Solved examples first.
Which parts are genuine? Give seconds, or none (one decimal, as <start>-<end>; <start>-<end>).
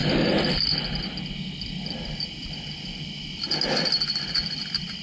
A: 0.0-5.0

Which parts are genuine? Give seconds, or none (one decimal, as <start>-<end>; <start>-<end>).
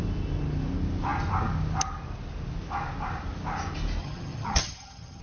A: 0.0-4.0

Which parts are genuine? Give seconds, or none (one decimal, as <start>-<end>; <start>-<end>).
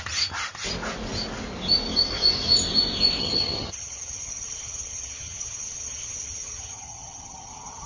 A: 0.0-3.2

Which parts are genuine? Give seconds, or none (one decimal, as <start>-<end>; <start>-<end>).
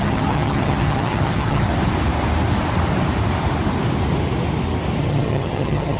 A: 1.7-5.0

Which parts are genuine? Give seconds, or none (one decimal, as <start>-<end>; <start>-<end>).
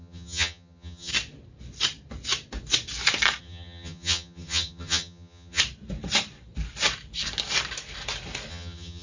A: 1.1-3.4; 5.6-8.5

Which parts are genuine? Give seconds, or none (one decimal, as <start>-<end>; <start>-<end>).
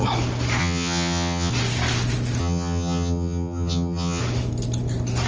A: 0.0-0.6; 1.5-2.4; 4.2-5.3